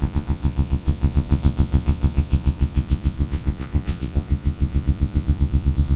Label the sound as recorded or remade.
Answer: remade